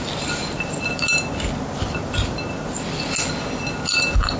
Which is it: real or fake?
real